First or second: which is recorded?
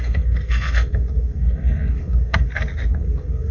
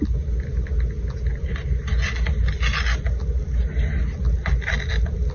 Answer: second